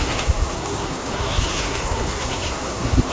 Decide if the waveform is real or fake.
fake